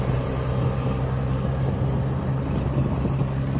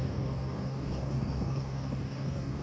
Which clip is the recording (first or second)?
first